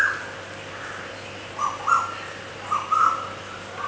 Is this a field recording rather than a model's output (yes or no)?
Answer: yes